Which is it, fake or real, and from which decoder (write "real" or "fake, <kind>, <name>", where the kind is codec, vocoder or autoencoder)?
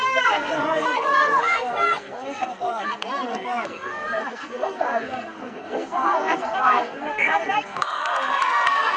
fake, codec, SNAC